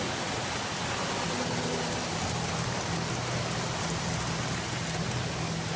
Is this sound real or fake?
real